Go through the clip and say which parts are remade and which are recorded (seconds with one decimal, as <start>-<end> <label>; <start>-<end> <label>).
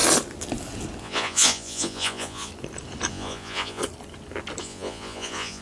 0.0-1.0 recorded; 1.0-2.5 remade; 2.5-3.1 recorded; 3.1-3.8 remade; 3.8-4.6 recorded; 4.6-5.6 remade